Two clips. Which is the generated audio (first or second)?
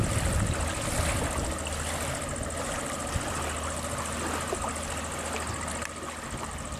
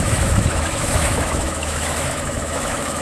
second